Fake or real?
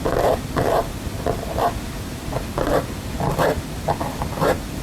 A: real